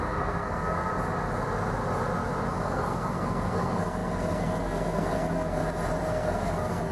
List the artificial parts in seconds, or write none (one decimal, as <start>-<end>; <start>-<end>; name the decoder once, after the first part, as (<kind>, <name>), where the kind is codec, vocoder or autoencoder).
0.0-0.9 (codec, SNAC); 2.5-5.6; 6.1-6.9